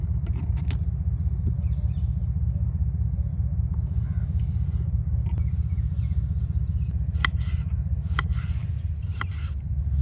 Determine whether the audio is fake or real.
real